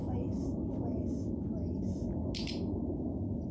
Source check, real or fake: real